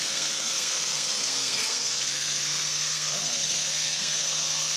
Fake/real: fake